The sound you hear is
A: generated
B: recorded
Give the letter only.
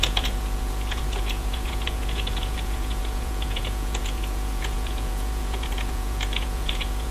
A